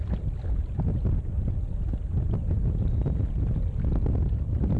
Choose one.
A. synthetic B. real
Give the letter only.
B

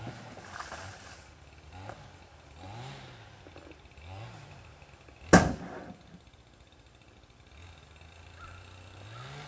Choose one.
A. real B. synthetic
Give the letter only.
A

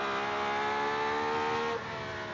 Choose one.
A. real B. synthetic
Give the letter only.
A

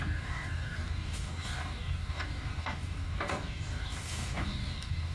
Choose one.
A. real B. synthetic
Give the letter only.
B